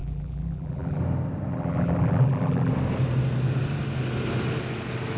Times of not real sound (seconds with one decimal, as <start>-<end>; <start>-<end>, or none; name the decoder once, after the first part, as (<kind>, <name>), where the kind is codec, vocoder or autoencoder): 0.0-1.0 (vocoder, BigVGAN v2); 1.5-2.7